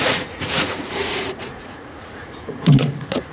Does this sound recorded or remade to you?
remade